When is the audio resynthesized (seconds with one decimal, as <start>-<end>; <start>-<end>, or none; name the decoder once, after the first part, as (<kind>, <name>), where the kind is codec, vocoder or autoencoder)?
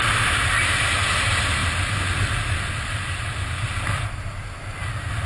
none